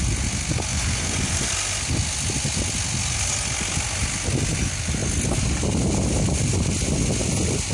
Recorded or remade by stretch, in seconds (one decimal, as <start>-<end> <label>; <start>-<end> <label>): 0.0-0.7 recorded; 0.7-1.5 remade; 1.5-7.7 recorded